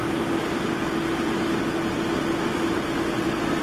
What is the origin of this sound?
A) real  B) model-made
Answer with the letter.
A